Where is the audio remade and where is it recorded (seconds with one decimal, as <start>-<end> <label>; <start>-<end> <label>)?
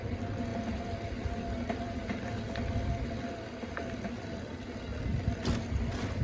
0.0-6.2 recorded